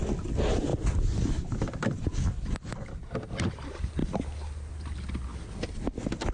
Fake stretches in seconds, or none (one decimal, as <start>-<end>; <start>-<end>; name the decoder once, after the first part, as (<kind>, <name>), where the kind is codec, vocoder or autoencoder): none